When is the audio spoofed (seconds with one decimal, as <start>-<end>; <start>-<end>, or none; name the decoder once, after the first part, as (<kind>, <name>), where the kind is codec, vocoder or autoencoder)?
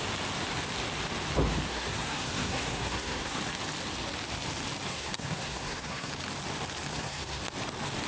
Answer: 1.7-3.4 (codec, SNAC); 4.9-6.1; 6.9-7.4